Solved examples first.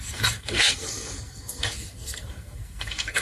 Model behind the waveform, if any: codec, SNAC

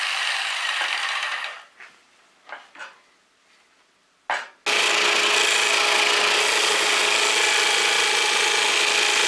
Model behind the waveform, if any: none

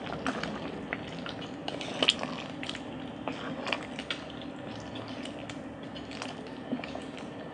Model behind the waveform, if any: none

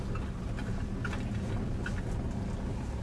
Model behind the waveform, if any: none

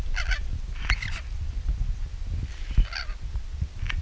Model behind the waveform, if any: none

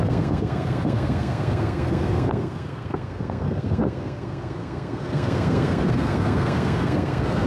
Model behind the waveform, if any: codec, SNAC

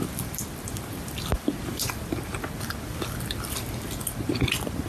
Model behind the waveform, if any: none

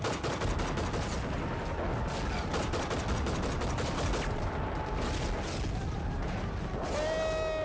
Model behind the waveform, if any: none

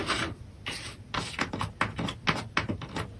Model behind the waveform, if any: none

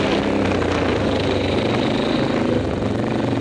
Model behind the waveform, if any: none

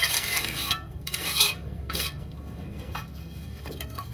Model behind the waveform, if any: codec, SNAC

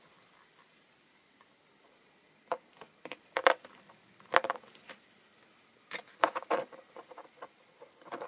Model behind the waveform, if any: none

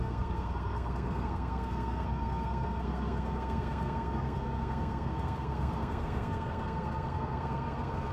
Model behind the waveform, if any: codec, SNAC